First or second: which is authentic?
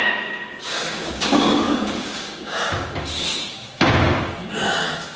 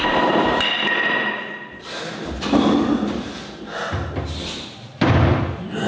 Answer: second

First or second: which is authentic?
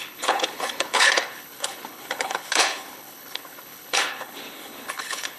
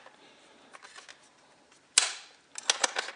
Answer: second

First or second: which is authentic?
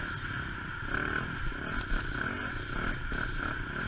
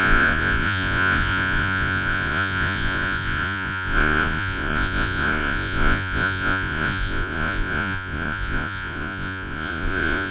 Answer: first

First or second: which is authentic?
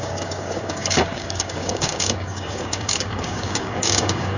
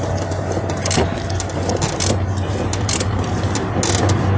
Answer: second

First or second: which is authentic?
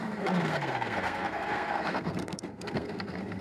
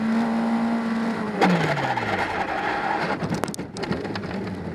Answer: second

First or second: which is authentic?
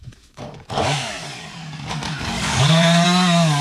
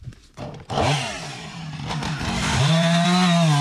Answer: second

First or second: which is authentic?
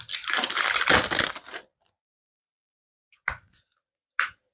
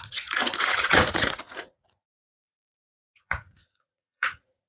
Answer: first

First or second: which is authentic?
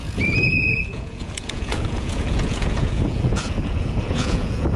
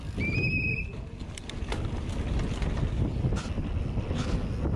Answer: second